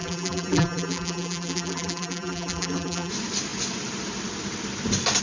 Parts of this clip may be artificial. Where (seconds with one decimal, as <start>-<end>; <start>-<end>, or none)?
0.0-3.1

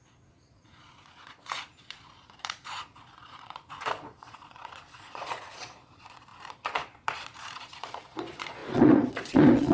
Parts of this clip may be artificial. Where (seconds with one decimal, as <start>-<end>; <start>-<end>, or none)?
0.0-9.7

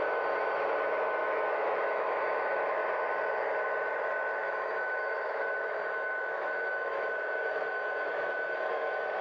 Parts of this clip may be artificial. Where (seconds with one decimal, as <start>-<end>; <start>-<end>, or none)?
1.2-2.2; 4.4-9.2

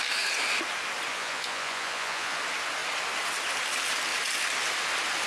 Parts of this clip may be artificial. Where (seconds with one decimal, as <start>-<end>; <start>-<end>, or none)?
1.1-2.4

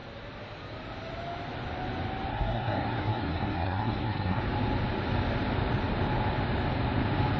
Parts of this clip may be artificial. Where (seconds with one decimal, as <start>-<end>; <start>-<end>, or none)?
2.3-4.4